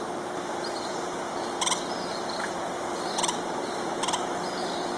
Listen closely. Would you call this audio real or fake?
fake